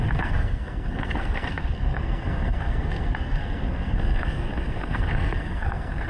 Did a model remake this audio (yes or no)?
yes